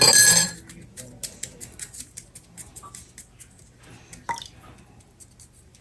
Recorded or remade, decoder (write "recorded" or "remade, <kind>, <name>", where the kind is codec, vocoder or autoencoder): recorded